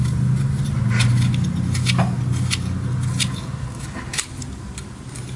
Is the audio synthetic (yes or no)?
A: no